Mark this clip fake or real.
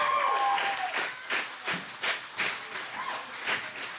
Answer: real